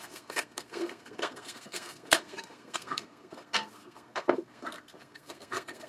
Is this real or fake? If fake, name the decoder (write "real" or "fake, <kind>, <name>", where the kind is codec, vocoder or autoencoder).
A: fake, codec, SNAC